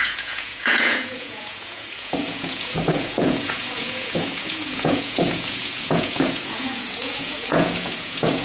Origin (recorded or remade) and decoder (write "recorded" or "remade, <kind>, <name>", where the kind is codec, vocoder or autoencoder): remade, vocoder, Vocos